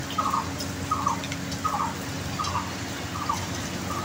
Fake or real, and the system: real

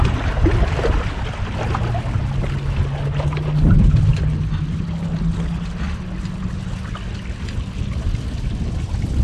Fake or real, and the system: real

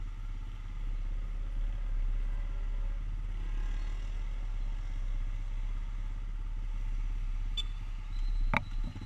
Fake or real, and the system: real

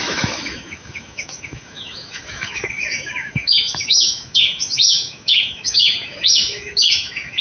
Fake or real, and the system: fake, autoencoder, DAC-VAE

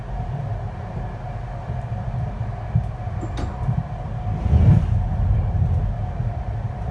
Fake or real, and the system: real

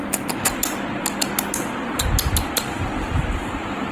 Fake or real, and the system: real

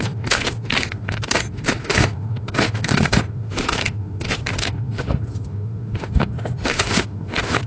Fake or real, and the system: fake, autoencoder, DAC-VAE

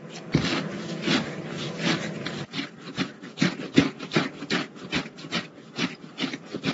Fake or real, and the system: real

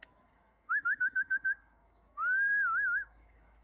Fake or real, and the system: fake, autoencoder, DAC-VAE